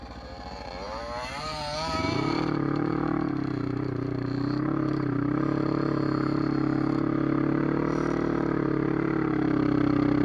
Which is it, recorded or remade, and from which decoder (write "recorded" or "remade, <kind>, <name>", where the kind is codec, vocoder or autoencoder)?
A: remade, vocoder, BigVGAN v2